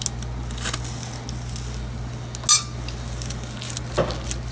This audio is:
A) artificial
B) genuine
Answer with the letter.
B